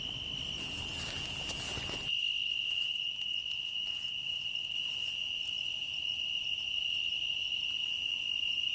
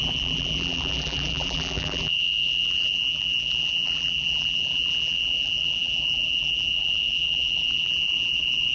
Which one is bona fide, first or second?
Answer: first